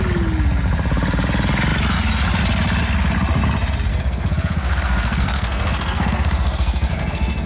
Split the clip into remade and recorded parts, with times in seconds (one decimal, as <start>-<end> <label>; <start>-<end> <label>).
0.0-3.9 recorded; 3.9-7.5 remade